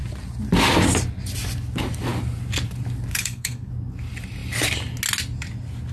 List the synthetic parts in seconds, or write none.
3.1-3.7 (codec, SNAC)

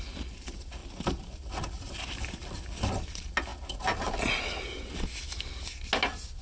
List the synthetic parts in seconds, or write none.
0.8-2.5 (vocoder, BigVGAN v2)